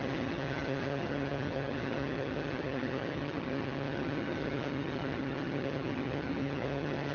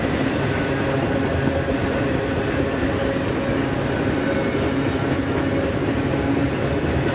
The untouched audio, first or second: second